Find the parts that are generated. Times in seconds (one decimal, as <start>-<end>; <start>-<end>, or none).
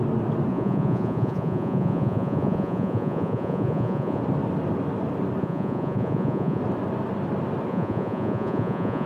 0.5-4.2; 5.4-6.6; 7.7-9.1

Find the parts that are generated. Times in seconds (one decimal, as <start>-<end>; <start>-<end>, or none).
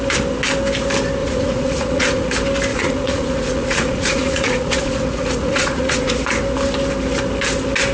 1.2-2.3; 2.7-6.1